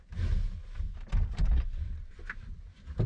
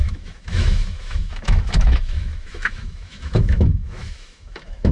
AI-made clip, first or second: second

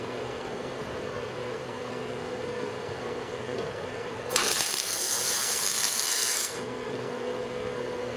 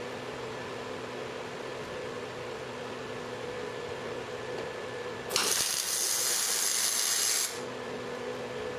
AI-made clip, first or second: first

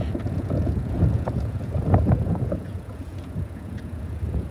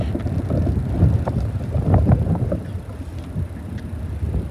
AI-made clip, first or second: first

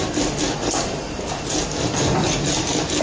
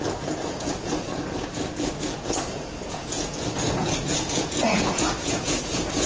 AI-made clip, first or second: second